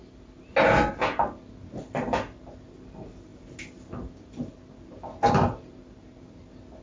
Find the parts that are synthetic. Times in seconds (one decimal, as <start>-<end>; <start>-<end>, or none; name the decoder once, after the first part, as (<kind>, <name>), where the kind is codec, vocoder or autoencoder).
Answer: none